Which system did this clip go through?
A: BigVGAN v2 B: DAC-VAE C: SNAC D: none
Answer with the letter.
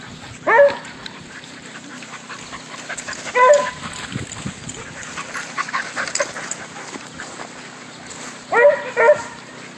D